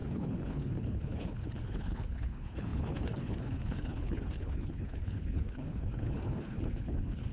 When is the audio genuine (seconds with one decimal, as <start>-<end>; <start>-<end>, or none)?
none